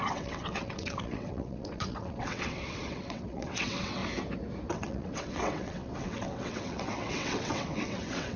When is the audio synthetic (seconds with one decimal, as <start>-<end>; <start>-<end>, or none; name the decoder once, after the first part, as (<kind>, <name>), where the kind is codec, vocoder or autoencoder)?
0.0-4.0 (vocoder, WaveNeXt); 4.7-8.4